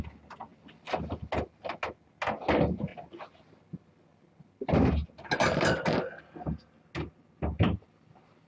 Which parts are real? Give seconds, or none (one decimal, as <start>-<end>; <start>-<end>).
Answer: 0.0-8.5